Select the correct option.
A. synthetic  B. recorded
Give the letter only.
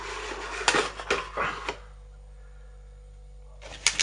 B